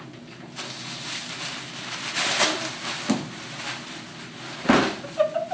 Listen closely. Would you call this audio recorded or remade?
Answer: recorded